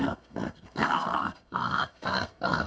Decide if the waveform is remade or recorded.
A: remade